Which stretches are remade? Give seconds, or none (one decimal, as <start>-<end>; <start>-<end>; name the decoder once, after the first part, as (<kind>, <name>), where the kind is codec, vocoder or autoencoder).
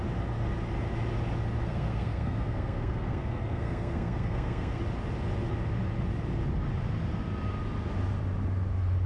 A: 1.6-4.8 (codec, SNAC)